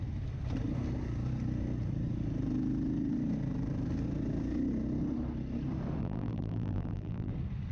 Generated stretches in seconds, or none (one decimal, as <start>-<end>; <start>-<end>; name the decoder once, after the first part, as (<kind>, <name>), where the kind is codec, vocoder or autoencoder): 6.0-7.3 (vocoder, BigVGAN v2)